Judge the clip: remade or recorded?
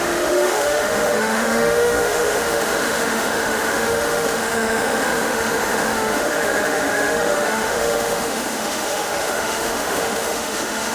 remade